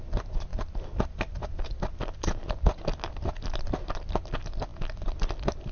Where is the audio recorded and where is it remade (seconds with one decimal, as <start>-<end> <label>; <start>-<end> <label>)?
0.0-0.5 recorded; 0.5-3.9 remade; 3.9-5.7 recorded